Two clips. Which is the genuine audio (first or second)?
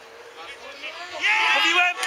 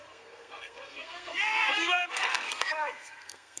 first